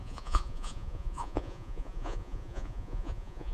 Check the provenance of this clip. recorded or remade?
remade